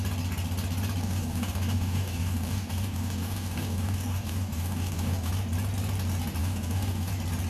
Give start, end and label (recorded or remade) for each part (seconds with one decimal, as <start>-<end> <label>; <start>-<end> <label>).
0.0-1.0 recorded; 1.0-5.3 remade; 5.3-6.4 recorded; 6.4-7.1 remade; 7.1-7.5 recorded